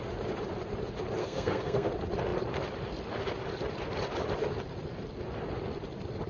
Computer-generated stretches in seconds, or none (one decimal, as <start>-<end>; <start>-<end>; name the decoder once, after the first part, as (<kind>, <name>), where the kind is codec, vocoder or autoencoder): 1.2-1.9 (codec, SNAC)